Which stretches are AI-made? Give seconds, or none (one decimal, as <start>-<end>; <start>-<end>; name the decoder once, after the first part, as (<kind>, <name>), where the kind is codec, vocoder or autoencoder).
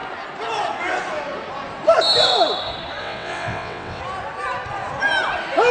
3.0-4.0 (vocoder, WaveNeXt)